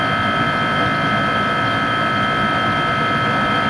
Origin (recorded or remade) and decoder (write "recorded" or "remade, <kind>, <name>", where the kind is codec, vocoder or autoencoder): recorded